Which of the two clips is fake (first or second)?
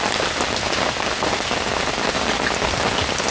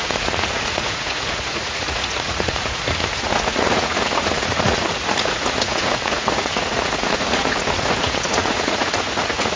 second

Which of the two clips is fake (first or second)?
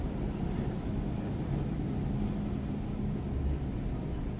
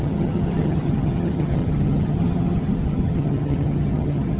second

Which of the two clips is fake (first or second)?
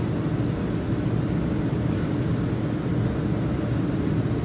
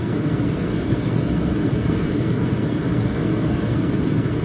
second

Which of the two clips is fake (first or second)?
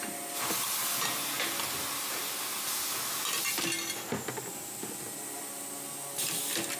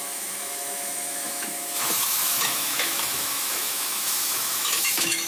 second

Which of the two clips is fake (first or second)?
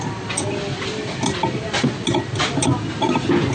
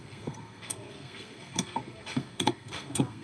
second